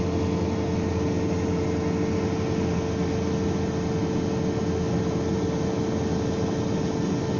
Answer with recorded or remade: recorded